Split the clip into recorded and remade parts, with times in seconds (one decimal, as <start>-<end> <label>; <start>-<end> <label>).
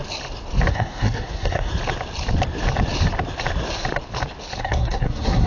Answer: 0.0-0.7 recorded; 0.7-1.7 remade; 1.7-4.6 recorded; 4.6-5.5 remade